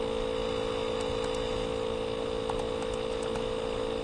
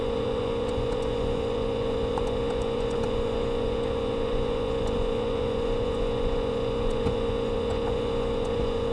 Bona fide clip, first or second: first